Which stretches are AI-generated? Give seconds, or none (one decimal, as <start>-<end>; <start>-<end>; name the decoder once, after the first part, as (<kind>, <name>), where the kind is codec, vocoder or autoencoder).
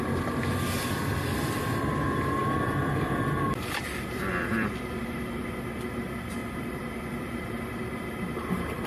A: 2.4-5.4 (vocoder, BigVGAN v2); 6.4-7.0